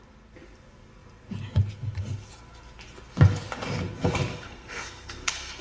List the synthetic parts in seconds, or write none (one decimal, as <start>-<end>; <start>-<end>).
4.3-5.6